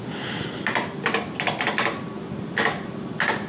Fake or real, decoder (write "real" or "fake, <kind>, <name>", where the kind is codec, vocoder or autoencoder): real